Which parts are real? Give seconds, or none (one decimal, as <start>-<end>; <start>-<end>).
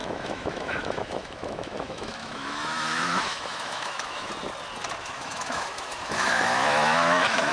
4.3-5.0